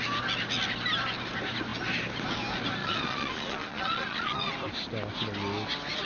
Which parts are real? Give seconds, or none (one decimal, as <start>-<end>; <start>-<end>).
0.0-2.8; 4.5-6.1